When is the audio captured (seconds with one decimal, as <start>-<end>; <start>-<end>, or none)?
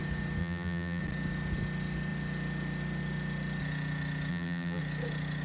0.0-0.4; 1.0-4.3; 4.8-5.4